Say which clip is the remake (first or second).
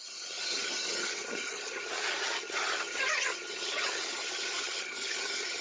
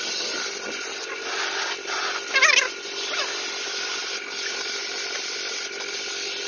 first